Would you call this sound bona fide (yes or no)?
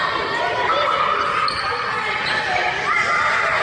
yes